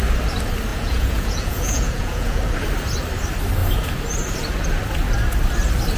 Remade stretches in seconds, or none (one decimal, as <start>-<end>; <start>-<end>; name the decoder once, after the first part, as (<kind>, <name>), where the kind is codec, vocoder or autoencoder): 0.7-2.4 (vocoder, Vocos)